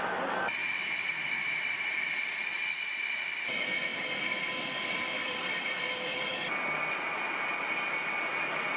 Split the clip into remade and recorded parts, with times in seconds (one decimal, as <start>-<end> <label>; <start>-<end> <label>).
0.0-0.6 recorded; 0.6-2.6 remade; 2.6-3.9 recorded; 3.9-4.5 remade; 4.5-5.1 recorded; 5.1-6.3 remade; 6.3-8.8 recorded